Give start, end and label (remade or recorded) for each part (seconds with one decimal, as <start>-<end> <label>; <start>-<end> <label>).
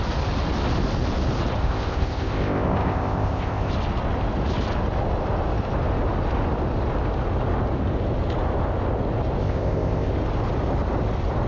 0.0-1.6 recorded; 1.6-3.7 remade; 3.7-9.4 recorded; 9.4-10.1 remade; 10.1-11.5 recorded